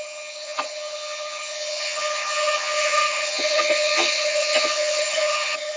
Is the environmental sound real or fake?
fake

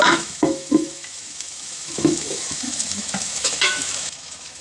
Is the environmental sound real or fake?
fake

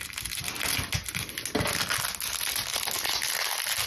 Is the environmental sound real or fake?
real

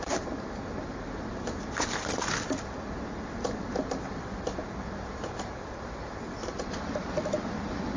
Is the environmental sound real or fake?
real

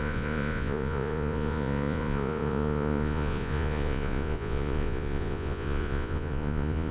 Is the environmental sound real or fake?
fake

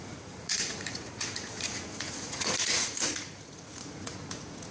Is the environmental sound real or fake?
fake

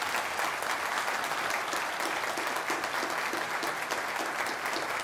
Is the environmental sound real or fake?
real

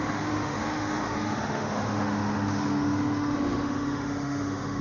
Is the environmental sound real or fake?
fake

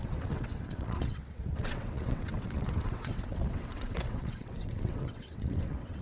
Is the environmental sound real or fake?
fake